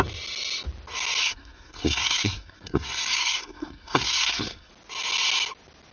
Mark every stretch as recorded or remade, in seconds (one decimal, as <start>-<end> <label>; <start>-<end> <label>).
0.0-1.2 recorded; 1.2-4.7 remade; 4.7-5.9 recorded